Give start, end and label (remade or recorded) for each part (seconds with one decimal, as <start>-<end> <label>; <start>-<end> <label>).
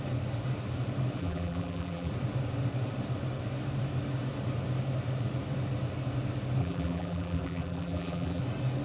0.0-1.2 recorded; 1.2-2.1 remade; 2.1-6.6 recorded; 6.6-8.4 remade; 8.4-8.8 recorded